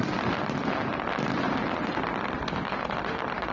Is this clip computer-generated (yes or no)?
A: no